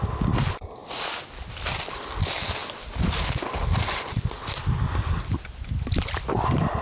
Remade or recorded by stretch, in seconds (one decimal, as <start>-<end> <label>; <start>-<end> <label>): 0.0-6.8 recorded